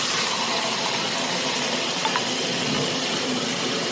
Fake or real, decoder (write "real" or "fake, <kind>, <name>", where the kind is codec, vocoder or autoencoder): real